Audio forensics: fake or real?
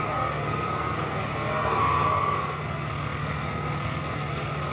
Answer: fake